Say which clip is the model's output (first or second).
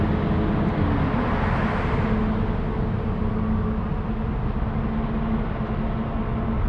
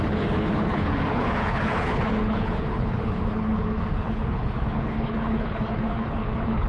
second